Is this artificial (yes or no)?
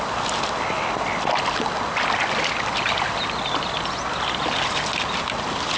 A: no